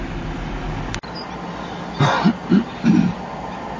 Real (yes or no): yes